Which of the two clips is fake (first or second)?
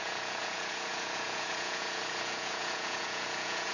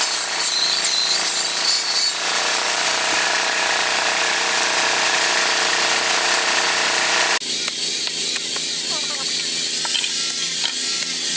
first